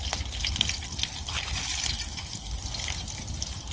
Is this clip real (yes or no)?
yes